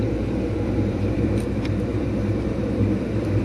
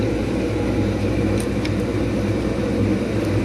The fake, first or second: first